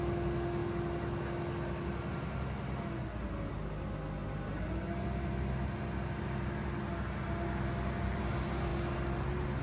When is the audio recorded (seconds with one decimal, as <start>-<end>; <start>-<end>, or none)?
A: 0.0-9.6